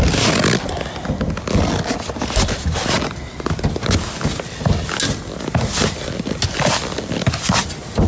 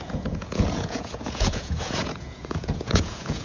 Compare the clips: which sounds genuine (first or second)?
first